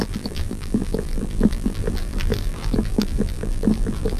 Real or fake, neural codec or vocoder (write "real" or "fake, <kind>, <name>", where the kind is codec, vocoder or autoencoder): fake, vocoder, BigVGAN v2